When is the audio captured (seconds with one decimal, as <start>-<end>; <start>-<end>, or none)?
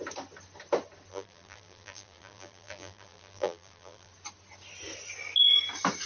0.0-1.1; 4.1-6.1